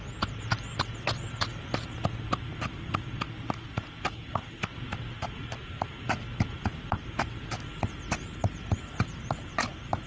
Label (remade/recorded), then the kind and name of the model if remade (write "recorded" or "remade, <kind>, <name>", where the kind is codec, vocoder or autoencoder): remade, vocoder, BigVGAN v2